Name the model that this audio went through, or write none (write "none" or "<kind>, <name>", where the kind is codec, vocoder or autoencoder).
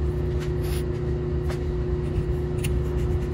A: none